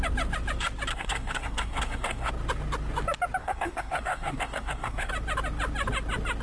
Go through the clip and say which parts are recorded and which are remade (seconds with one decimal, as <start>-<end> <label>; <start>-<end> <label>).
0.0-0.9 recorded; 0.9-2.3 remade; 2.3-3.4 recorded; 3.4-5.1 remade; 5.1-6.4 recorded